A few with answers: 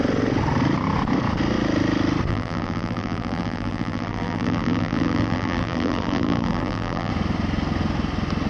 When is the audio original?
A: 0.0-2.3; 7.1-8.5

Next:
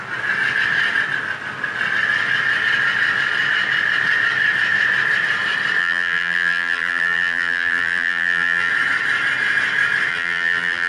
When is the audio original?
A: 0.0-5.8; 8.7-10.1

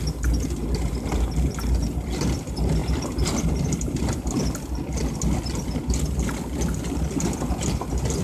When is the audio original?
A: 0.0-8.2

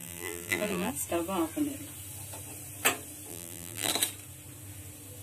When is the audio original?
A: 0.9-3.3; 3.9-5.2